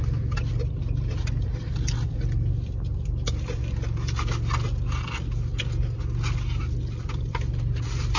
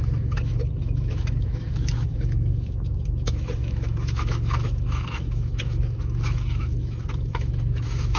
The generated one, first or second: second